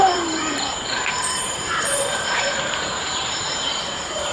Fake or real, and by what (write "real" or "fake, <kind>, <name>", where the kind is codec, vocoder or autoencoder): fake, vocoder, BigVGAN v2